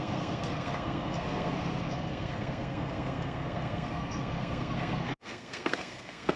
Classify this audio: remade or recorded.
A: remade